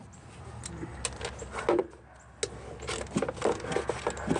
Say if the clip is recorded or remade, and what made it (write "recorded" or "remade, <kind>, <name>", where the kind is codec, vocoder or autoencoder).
recorded